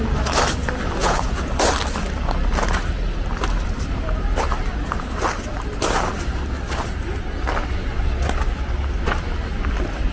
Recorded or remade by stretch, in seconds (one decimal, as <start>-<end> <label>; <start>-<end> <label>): 0.0-1.0 recorded; 1.0-1.5 remade; 1.5-10.1 recorded